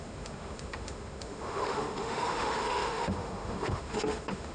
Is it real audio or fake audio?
fake